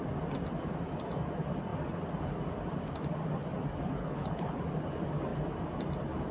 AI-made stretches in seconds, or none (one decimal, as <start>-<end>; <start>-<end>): 4.0-4.6